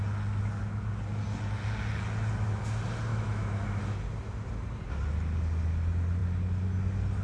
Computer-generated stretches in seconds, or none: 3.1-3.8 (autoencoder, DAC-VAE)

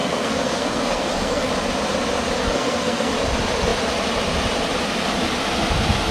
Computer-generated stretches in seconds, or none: 0.0-1.5 (codec, SNAC); 2.4-3.1